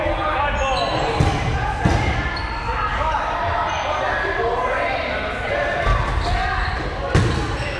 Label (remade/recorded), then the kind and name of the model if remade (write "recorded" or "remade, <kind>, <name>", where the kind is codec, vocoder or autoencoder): recorded